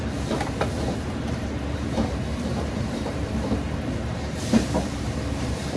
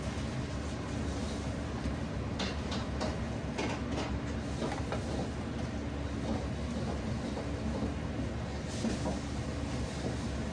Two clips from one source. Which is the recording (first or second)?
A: second